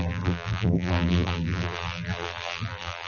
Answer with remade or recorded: remade